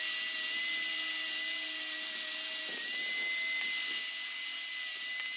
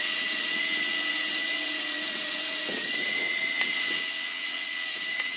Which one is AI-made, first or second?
second